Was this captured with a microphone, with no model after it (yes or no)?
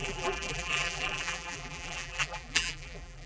no